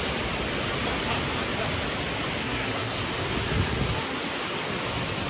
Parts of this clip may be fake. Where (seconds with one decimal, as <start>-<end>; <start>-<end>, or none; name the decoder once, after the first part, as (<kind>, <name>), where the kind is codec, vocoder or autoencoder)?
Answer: 2.4-3.0 (codec, SNAC)